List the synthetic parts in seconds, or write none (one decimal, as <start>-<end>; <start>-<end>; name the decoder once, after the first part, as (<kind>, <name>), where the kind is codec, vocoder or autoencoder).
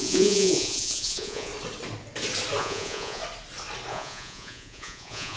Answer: 0.0-1.5 (vocoder, Vocos); 2.6-3.2; 3.9-5.4